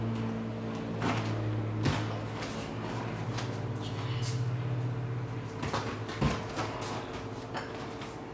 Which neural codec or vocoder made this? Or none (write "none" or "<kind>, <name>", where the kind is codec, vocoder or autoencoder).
none